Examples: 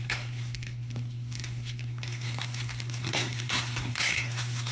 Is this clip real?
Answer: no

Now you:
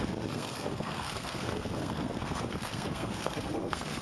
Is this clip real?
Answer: no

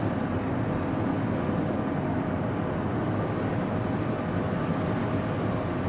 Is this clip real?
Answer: yes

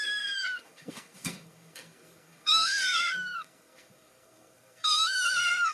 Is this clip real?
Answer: no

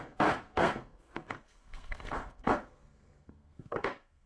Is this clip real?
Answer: no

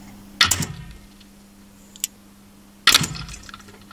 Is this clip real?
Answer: yes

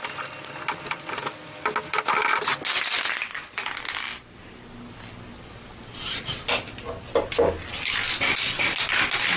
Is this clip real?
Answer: yes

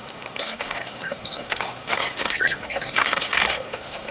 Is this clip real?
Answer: no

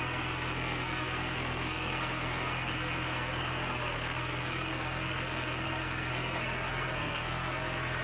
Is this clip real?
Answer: no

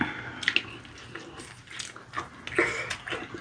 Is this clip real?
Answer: yes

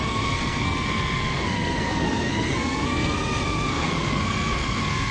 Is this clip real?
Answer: no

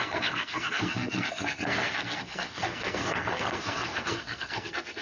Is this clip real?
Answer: no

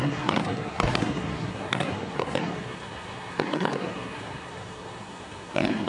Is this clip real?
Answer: no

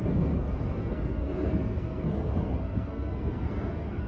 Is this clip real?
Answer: no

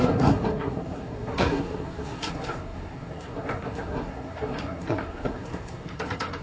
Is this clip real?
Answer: no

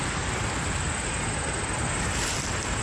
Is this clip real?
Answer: yes